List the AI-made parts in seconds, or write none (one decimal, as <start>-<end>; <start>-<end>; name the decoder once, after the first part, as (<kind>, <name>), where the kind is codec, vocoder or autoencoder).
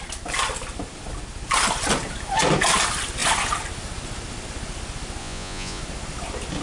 5.2-5.8 (vocoder, Vocos)